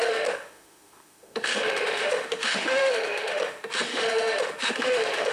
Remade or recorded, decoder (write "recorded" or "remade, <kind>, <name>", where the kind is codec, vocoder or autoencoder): remade, autoencoder, DAC-VAE